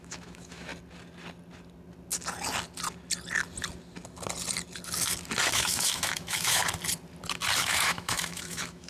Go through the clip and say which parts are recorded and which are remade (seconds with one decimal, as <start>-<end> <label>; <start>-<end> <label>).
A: 0.0-0.7 remade; 0.7-5.5 recorded; 5.5-6.6 remade; 6.6-7.6 recorded; 7.6-8.9 remade